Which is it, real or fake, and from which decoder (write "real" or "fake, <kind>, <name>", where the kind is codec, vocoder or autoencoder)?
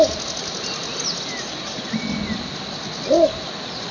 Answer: real